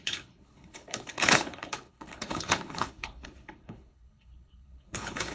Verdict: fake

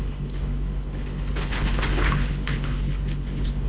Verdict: fake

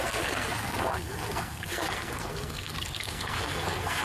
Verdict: fake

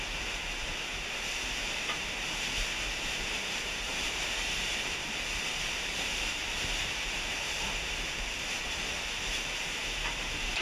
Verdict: fake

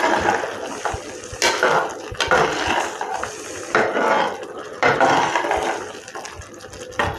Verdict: real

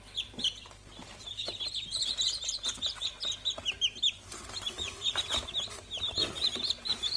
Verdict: fake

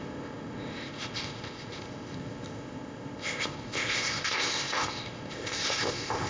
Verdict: fake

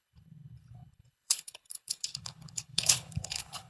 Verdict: fake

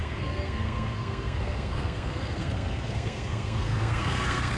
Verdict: fake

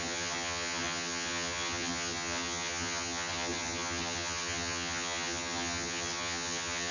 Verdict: fake